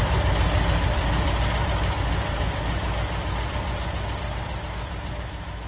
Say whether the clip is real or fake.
real